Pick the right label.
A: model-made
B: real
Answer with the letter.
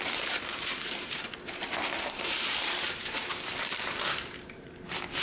A